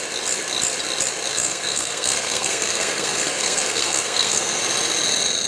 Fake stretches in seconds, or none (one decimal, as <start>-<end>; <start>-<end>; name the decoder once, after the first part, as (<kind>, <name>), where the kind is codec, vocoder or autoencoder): 1.3-4.6 (codec, SNAC)

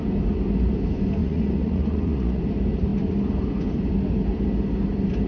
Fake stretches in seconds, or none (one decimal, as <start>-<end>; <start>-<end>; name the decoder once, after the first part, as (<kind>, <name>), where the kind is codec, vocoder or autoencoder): 1.2-2.4 (vocoder, Vocos)